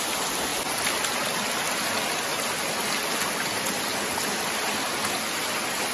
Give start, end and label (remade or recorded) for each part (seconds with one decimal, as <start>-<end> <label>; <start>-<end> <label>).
0.0-5.9 recorded